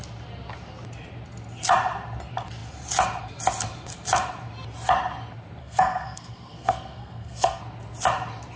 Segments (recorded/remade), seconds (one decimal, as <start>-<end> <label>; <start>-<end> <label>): 0.0-5.6 recorded; 5.6-7.6 remade; 7.6-8.6 recorded